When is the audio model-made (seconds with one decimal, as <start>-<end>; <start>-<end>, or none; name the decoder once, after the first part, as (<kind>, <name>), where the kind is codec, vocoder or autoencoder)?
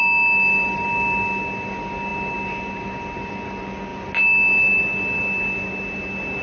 none